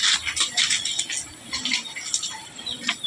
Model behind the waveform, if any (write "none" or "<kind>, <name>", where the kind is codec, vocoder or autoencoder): none